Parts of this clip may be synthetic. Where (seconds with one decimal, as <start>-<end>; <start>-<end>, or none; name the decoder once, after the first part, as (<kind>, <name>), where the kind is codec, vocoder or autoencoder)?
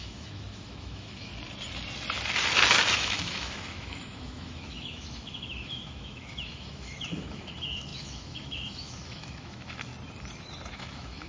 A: 0.0-1.3 (autoencoder, DAC-VAE); 2.9-9.9; 10.7-11.3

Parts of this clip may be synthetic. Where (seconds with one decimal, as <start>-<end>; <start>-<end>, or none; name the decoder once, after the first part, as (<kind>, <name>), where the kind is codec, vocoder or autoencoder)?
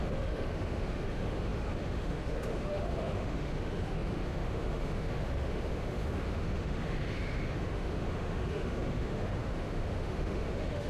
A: 0.0-10.9 (autoencoder, DAC-VAE)